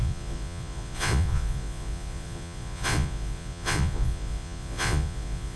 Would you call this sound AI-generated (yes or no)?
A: yes